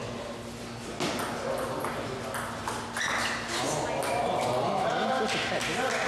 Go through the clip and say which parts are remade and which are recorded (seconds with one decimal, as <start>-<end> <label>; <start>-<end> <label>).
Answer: 0.0-6.1 recorded